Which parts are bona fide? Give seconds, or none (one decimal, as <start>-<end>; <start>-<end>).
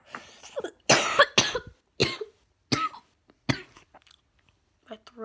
0.0-5.2